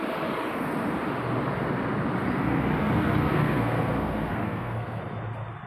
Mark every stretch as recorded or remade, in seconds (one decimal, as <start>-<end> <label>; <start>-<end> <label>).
0.0-2.8 recorded; 2.8-5.0 remade; 5.0-5.7 recorded